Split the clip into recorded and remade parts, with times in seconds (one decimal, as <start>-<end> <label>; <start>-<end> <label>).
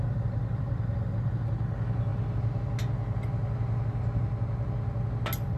0.0-5.6 recorded